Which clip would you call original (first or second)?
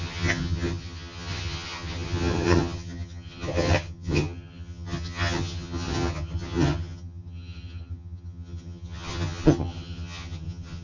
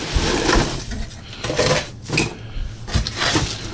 second